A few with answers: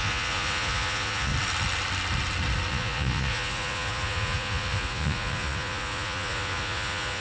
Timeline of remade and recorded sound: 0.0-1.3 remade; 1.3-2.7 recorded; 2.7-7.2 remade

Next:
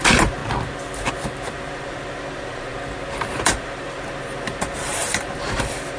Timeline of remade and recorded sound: 0.0-0.4 remade; 0.4-1.5 recorded; 1.5-2.7 remade; 2.7-3.3 recorded; 3.3-6.0 remade

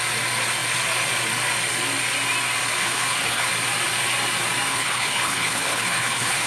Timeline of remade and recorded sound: 0.0-2.8 recorded; 2.8-3.5 remade; 3.5-4.7 recorded; 4.7-6.5 remade

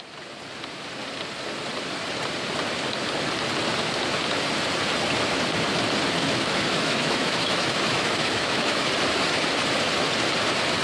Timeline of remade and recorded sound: 0.0-6.2 recorded; 6.2-8.9 remade; 8.9-10.8 recorded